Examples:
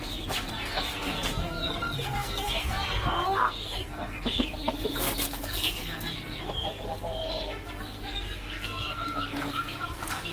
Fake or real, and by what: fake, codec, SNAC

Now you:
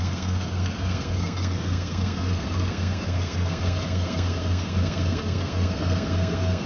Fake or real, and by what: fake, codec, SNAC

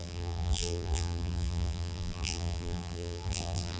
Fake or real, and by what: fake, vocoder, BigVGAN v2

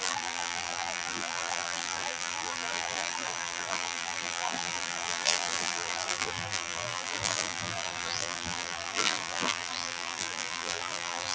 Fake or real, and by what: fake, vocoder, BigVGAN v2